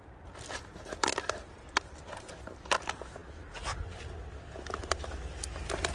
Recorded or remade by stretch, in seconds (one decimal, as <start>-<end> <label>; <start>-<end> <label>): 0.0-5.9 recorded